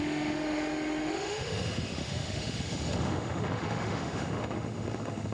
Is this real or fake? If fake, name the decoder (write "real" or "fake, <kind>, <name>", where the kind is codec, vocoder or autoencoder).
fake, autoencoder, DAC-VAE